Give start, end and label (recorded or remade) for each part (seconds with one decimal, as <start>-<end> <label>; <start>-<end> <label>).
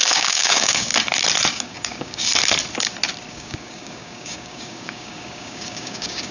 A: 0.0-0.9 remade; 0.9-1.5 recorded; 1.5-2.3 remade; 2.3-3.3 recorded; 3.3-6.3 remade